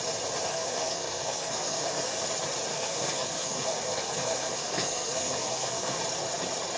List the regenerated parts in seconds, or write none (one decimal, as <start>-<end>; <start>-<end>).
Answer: 0.5-2.2; 2.7-6.0